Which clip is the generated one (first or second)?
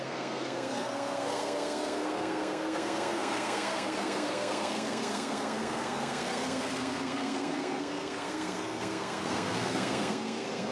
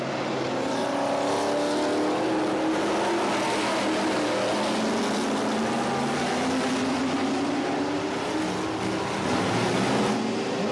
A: first